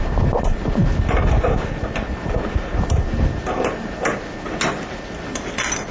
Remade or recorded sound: recorded